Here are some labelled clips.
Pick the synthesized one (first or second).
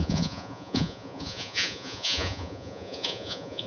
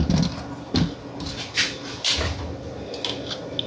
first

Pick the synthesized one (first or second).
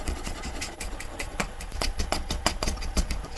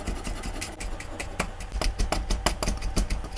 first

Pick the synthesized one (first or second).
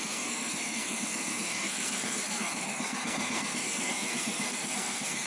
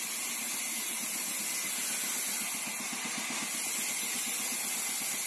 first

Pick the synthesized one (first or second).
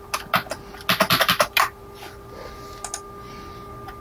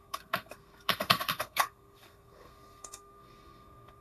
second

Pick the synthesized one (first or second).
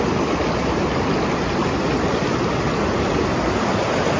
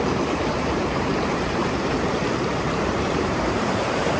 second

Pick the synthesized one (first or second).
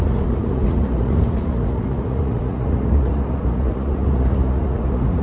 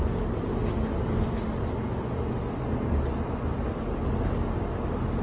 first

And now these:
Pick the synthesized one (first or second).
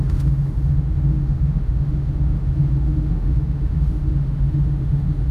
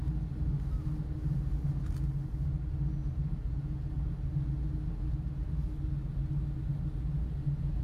first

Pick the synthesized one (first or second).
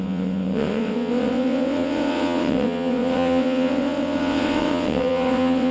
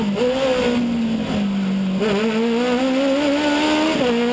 first